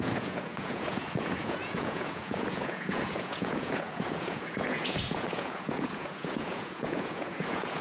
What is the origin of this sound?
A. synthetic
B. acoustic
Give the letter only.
A